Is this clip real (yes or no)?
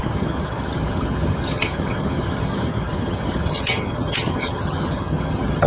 no